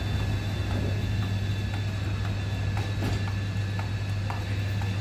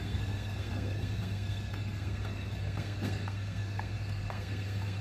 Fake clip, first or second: second